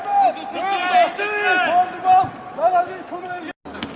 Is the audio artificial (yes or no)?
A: no